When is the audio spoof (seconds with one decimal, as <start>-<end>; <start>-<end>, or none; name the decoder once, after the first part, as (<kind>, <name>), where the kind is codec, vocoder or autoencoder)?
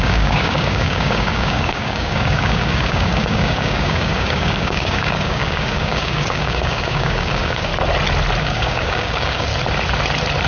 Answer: 0.0-7.7 (codec, DAC); 8.4-9.5